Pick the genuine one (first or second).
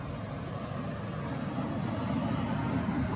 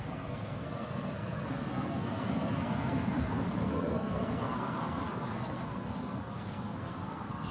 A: first